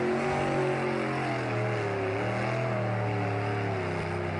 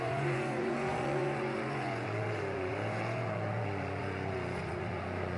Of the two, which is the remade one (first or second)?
second